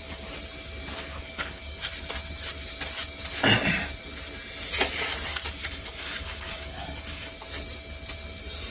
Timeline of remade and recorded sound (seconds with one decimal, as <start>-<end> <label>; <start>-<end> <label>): 0.0-1.1 recorded; 1.1-1.8 remade; 1.8-5.3 recorded; 5.3-7.3 remade; 7.3-8.7 recorded